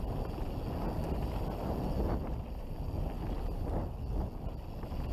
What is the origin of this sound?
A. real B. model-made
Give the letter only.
A